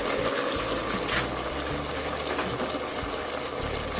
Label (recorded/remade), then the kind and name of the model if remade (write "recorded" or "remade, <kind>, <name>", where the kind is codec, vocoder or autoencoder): recorded